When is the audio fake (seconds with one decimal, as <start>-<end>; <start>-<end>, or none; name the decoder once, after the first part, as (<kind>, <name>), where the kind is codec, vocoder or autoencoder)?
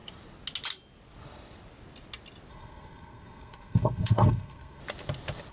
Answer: 2.5-4.8 (codec, SNAC)